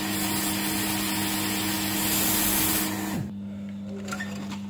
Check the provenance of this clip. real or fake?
real